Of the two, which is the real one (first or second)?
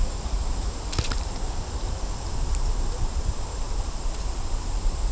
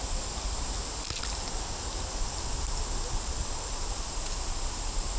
second